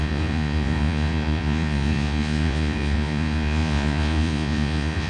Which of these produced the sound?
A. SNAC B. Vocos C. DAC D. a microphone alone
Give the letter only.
B